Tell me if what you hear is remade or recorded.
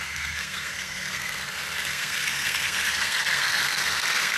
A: remade